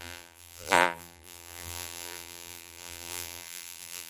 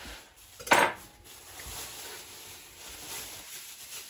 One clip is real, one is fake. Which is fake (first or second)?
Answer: first